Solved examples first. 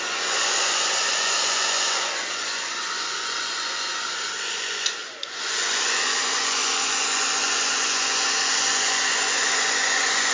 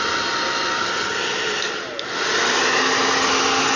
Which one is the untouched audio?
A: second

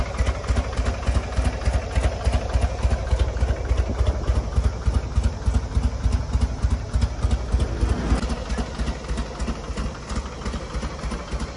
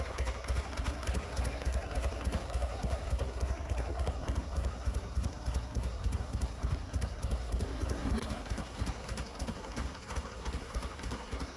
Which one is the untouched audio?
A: first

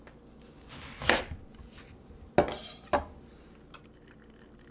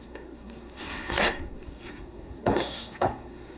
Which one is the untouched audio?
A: first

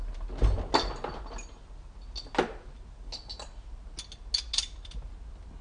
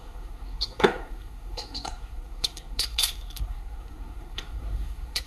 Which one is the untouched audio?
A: first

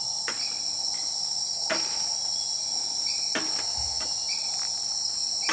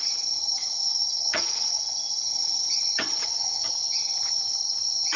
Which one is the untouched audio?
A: first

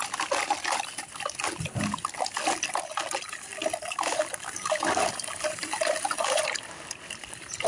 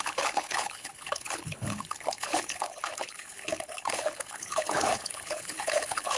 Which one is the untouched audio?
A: first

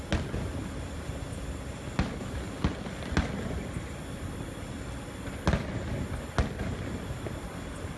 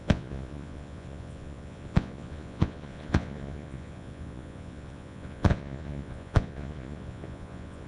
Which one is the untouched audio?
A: first